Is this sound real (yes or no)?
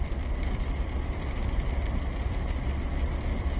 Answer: yes